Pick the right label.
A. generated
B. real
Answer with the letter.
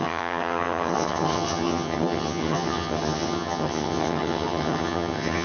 A